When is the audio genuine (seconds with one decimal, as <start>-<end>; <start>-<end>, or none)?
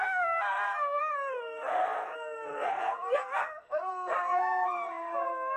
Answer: none